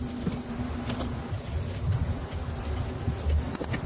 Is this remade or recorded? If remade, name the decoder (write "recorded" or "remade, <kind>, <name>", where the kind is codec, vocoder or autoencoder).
recorded